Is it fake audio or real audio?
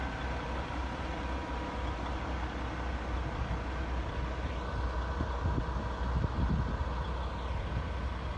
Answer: real